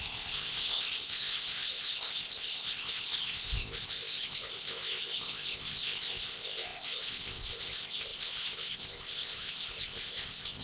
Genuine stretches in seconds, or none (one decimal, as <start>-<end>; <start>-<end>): none